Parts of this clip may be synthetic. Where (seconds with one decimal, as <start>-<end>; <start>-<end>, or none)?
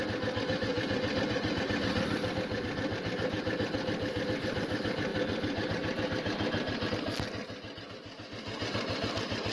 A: 0.7-1.6